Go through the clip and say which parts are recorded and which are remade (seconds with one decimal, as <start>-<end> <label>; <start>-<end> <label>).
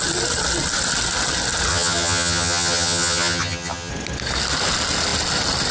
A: 0.0-1.7 recorded; 1.7-3.9 remade; 3.9-5.7 recorded